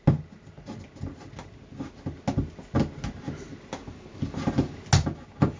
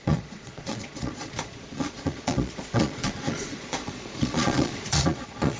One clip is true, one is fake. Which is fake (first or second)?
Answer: second